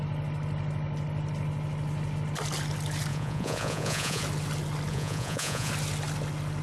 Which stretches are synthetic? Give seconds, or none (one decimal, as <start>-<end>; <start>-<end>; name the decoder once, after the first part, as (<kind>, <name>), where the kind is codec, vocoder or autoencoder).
3.1-4.2 (vocoder, Vocos); 4.9-5.7